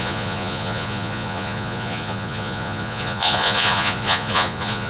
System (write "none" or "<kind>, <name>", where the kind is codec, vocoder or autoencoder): vocoder, Vocos